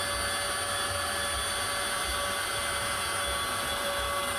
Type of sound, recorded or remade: recorded